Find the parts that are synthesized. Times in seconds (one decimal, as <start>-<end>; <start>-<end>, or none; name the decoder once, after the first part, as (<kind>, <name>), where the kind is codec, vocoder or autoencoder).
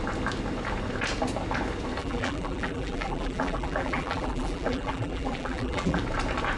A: 2.0-6.0 (vocoder, BigVGAN v2)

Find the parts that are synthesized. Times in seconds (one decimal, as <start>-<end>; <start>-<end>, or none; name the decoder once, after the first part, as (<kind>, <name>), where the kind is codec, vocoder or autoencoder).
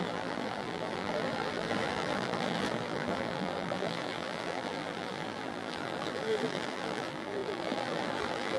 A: 0.0-8.6 (vocoder, BigVGAN v2)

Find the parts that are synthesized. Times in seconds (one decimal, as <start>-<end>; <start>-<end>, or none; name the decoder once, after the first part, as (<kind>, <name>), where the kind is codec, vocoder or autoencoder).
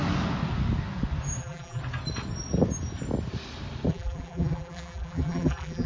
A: 1.4-1.8 (vocoder, BigVGAN v2); 3.9-5.9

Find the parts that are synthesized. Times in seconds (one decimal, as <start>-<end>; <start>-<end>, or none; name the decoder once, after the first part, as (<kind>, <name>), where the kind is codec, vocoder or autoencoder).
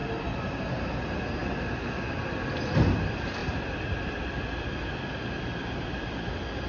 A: none